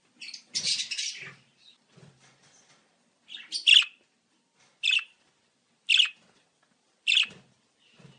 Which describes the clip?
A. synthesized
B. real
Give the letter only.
A